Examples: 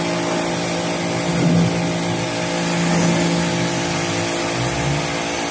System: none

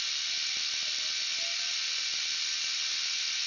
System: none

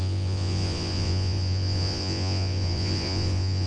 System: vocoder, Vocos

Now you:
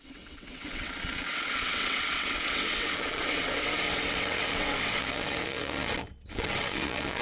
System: vocoder, WaveNeXt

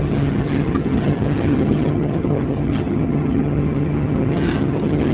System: vocoder, HiFi-GAN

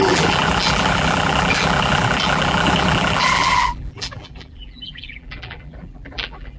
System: vocoder, BigVGAN v2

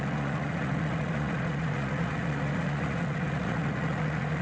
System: vocoder, Vocos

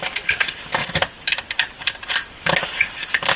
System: none